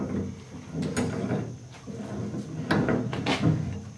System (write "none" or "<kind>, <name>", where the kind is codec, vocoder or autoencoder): none